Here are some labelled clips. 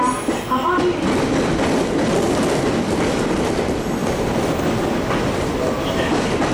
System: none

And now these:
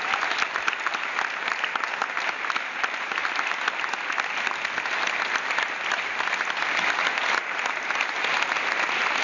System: none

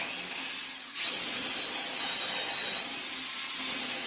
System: none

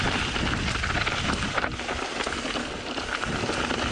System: none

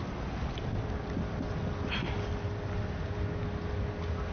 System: none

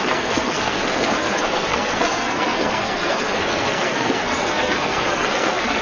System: codec, SNAC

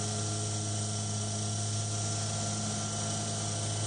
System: none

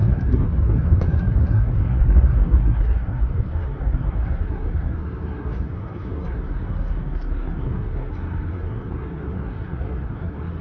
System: codec, SNAC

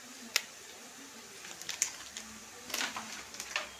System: none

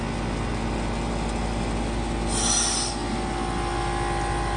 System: none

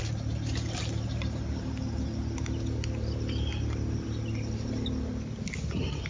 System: none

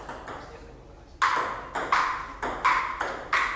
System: none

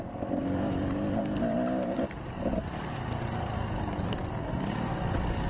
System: none